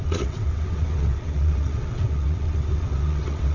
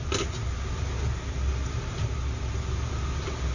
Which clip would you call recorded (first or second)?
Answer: second